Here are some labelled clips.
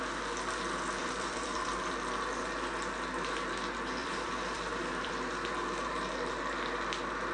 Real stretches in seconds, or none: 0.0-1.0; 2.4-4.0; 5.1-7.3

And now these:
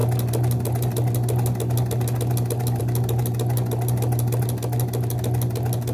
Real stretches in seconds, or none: 0.0-5.9

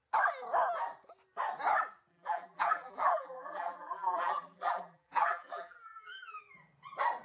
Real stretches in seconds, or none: 0.0-2.1; 6.4-7.2

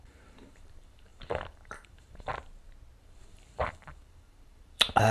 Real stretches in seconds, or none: 2.3-3.0

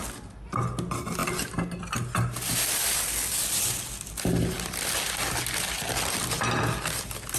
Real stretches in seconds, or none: 0.0-7.4

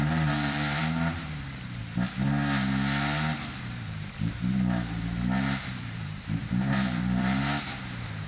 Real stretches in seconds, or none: 1.8-3.6

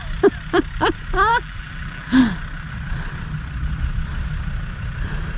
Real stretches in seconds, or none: 0.0-1.3; 2.2-5.4